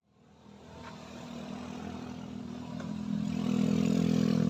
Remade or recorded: recorded